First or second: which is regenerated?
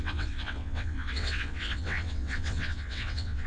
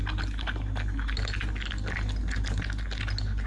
first